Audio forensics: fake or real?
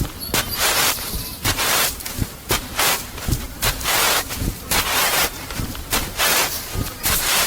fake